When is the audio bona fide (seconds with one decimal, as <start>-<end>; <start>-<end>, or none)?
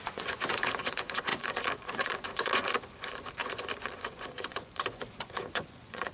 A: none